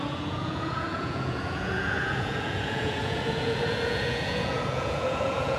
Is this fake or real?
fake